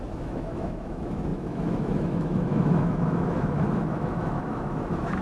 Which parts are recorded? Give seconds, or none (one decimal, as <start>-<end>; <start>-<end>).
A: none